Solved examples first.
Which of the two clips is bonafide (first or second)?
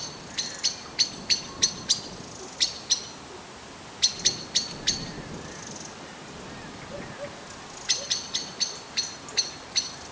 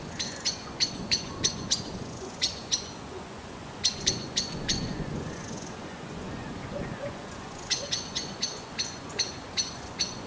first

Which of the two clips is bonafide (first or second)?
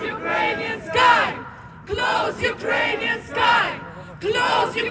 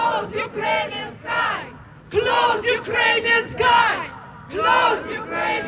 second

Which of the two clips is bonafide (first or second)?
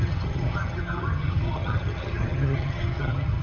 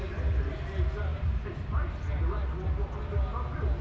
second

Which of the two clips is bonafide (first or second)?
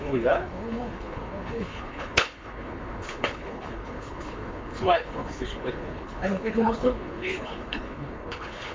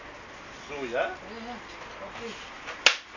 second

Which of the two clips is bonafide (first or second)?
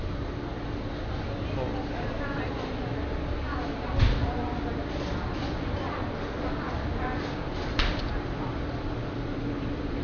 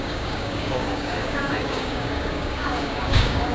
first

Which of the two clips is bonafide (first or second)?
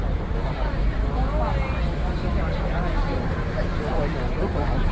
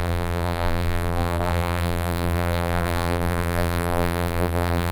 first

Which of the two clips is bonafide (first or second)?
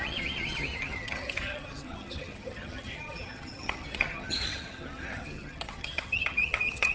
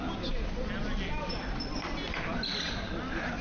second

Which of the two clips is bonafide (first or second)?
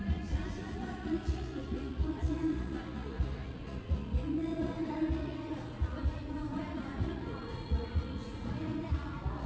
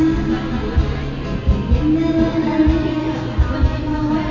second